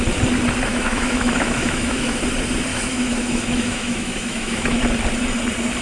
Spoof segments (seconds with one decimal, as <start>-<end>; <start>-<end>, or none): 0.7-2.2; 2.7-4.8